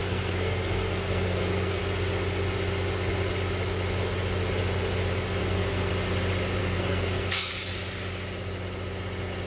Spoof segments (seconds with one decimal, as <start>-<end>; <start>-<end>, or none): 0.0-1.8; 5.4-5.9; 6.6-7.5